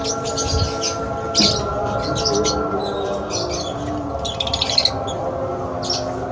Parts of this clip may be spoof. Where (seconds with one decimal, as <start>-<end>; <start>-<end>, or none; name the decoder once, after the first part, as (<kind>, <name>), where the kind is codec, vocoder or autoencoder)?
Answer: none